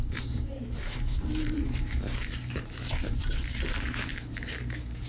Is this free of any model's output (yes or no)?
no